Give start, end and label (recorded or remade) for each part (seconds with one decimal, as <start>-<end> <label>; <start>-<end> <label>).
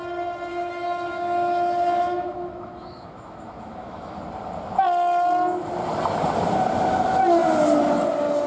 0.0-0.5 recorded; 0.5-4.2 remade; 4.2-8.5 recorded